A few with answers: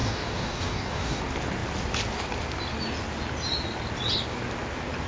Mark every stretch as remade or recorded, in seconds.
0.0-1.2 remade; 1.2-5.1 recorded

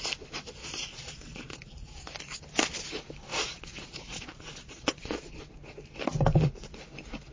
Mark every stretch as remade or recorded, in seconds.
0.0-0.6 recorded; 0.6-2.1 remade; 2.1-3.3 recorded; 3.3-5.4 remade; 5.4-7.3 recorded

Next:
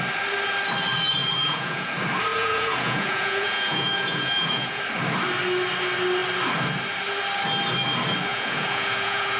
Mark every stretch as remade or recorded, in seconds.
0.0-1.2 recorded; 1.2-1.9 remade; 1.9-2.3 recorded; 2.3-4.8 remade; 4.8-8.3 recorded; 8.3-9.4 remade

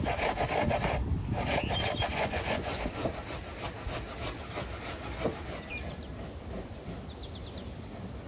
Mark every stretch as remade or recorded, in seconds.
0.0-2.1 recorded; 2.1-2.8 remade; 2.8-8.3 recorded